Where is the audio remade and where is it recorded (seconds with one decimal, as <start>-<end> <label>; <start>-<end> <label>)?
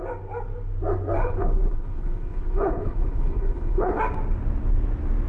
0.0-1.2 recorded; 1.2-4.0 remade; 4.0-5.3 recorded